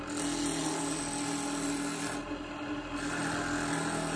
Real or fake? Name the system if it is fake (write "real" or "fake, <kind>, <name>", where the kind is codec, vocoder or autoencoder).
real